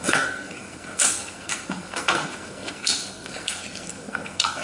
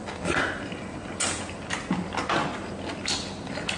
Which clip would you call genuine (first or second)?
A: second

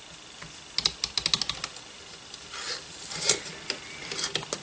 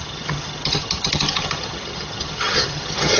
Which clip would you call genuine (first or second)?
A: first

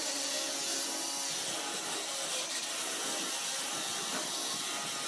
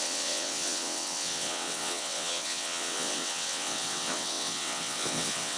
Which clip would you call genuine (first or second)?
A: first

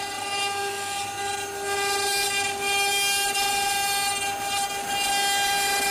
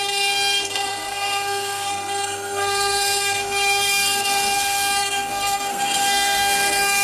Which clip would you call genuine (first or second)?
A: first